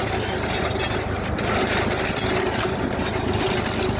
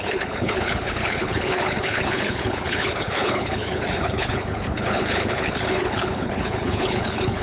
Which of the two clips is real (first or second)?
first